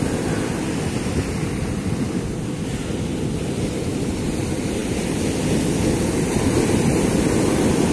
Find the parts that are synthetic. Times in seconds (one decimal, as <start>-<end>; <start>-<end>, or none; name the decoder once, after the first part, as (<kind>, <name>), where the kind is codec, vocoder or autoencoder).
none